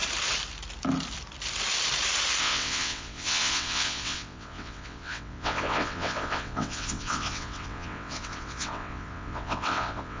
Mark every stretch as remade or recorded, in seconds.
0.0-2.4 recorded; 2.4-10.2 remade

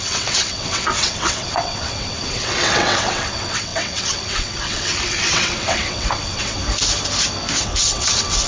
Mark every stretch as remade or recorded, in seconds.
0.0-6.6 remade; 6.6-7.6 recorded; 7.6-8.5 remade

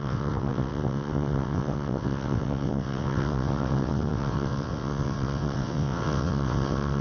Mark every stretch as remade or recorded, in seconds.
0.0-7.0 remade